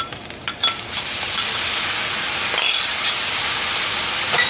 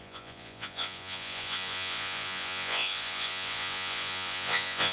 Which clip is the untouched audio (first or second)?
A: first